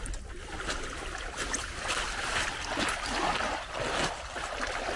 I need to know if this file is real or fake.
real